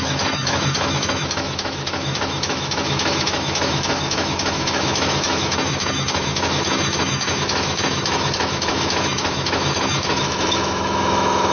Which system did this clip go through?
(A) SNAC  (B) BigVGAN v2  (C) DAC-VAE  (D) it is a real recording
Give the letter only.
C